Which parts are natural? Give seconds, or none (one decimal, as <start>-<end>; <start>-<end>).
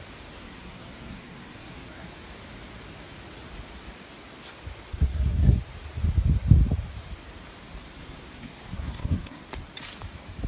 0.0-0.4; 2.1-4.9; 5.6-8.0; 9.4-10.5